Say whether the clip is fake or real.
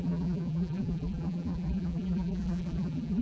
fake